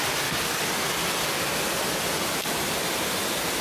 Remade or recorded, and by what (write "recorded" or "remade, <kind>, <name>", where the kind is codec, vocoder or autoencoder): recorded